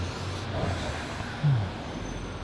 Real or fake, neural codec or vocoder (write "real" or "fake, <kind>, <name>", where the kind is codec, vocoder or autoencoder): real